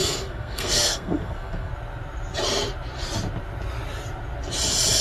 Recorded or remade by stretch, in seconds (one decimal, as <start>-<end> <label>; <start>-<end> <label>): 0.0-1.7 remade; 1.7-5.0 recorded